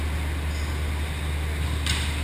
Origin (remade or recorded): recorded